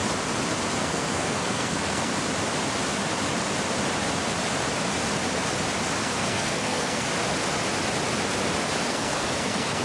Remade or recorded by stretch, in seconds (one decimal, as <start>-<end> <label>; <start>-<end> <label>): 0.0-0.8 recorded; 0.8-2.1 remade; 2.1-6.0 recorded; 6.0-7.1 remade; 7.1-8.9 recorded; 8.9-9.8 remade